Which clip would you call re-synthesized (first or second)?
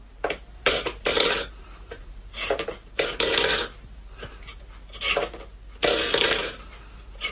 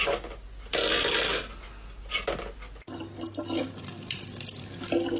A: first